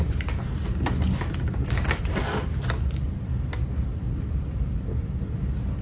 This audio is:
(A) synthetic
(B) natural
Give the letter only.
B